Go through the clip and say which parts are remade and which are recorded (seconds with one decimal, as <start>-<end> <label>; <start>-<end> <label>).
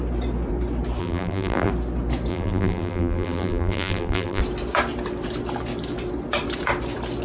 0.0-1.0 recorded; 1.0-1.7 remade; 1.7-2.3 recorded; 2.3-4.4 remade; 4.4-7.2 recorded